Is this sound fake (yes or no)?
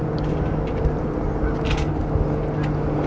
no